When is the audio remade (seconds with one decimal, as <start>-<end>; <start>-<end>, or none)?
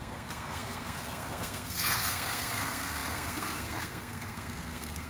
0.0-5.1